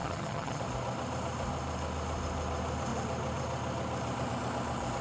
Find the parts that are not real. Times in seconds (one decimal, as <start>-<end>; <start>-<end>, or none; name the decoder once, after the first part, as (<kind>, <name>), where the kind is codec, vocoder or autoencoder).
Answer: 0.0-0.6 (vocoder, HiFi-GAN)